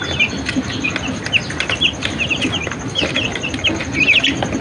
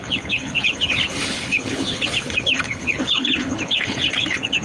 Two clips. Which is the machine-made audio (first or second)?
second